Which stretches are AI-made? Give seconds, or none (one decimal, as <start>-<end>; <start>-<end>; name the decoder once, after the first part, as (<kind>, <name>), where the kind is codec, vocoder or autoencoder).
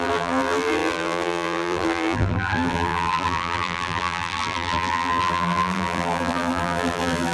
0.0-7.3 (vocoder, BigVGAN v2)